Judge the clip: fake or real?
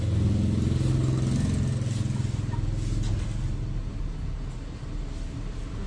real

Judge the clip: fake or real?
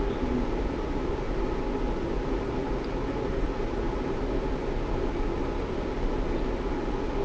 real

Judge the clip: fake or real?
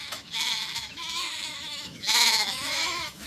fake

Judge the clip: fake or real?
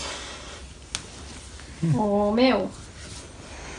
real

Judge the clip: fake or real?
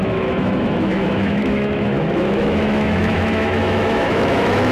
fake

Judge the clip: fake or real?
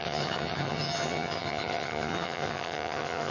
fake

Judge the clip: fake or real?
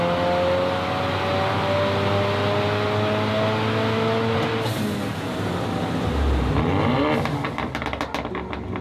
real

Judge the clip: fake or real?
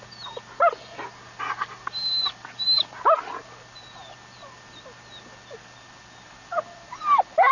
real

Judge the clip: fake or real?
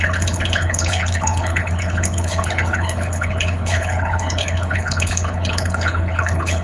fake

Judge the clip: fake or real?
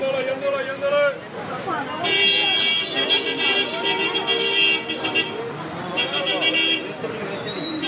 real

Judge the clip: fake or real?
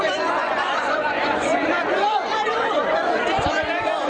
fake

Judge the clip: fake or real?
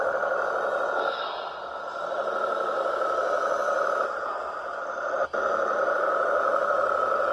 real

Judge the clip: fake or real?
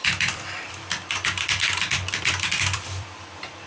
fake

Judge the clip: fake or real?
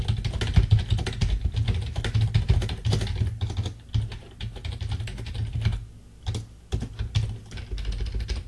real